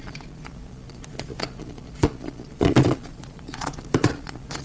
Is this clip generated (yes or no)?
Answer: yes